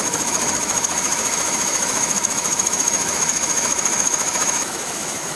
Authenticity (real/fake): fake